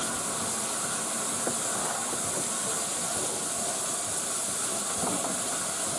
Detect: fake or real real